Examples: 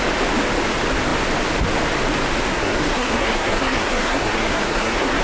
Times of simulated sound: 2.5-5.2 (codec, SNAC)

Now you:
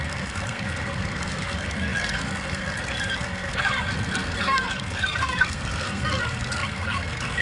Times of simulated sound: 0.0-7.4 (codec, SNAC)

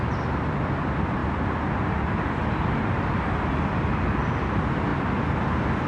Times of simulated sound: none

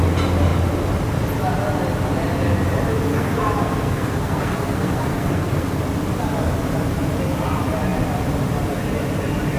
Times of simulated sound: 3.1-5.8 (codec, SNAC)

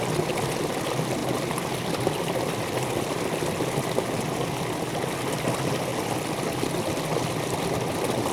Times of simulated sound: none